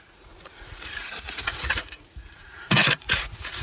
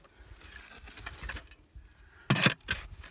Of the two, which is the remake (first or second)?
first